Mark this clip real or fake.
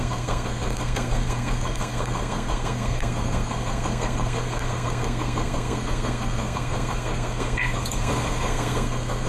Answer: fake